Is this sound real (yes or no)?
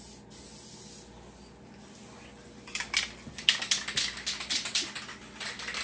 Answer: yes